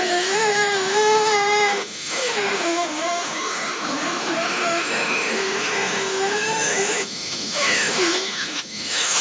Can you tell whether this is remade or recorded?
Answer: remade